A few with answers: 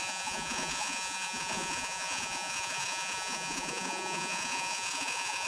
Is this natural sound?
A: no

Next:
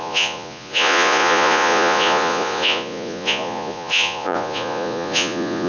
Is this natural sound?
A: no